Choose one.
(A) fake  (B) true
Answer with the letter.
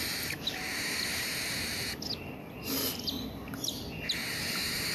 B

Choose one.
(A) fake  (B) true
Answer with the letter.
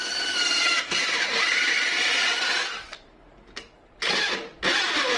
A